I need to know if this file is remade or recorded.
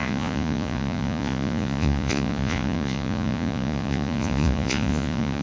remade